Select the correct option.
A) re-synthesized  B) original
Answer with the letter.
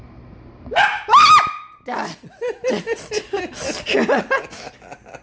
B